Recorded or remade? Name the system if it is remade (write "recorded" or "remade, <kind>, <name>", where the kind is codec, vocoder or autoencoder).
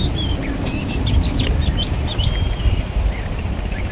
recorded